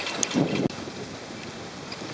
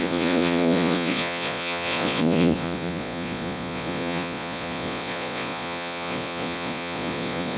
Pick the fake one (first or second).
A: second